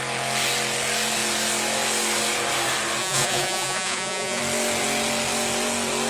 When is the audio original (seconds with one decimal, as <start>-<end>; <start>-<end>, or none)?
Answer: 0.0-3.0; 4.4-6.1